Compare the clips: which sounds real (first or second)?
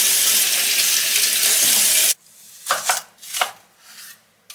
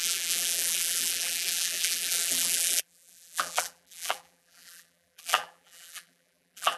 first